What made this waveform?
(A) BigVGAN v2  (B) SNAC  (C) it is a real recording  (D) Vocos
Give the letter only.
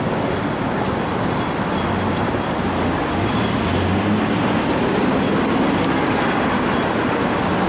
C